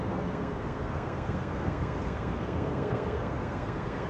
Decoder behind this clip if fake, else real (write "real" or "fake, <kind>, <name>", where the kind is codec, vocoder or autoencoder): fake, codec, SNAC